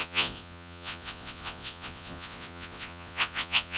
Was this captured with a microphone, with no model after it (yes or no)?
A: no